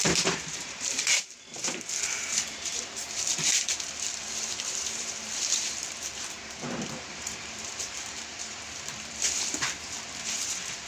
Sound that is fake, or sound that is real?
fake